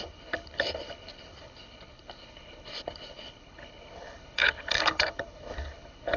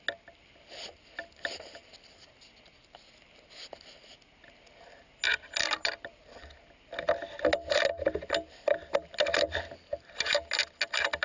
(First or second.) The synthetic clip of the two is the first